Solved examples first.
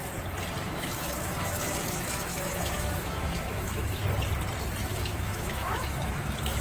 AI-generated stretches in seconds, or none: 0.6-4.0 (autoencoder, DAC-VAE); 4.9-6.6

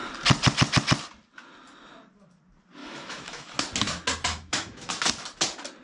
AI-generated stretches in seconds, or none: 2.8-3.5 (autoencoder, DAC-VAE); 4.3-4.9

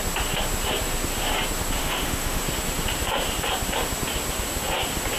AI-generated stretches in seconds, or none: 1.8-2.4 (autoencoder, DAC-VAE)